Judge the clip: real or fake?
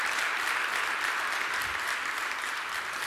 real